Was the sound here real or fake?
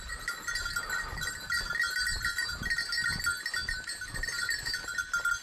real